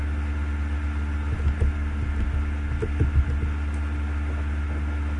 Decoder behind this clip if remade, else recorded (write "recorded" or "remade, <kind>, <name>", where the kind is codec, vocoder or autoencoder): recorded